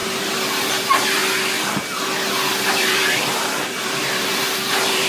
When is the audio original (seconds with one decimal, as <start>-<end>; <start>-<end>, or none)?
1.2-2.7

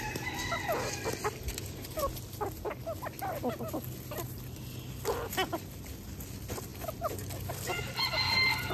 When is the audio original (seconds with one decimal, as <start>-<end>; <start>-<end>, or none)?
0.0-8.7

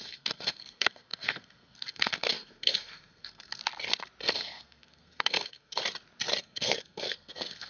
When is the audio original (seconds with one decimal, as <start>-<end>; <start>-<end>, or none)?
3.6-4.3; 5.8-6.4